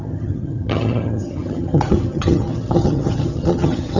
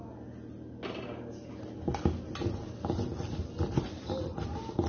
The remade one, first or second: first